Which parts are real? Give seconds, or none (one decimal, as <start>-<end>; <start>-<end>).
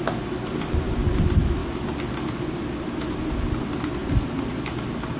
0.0-5.2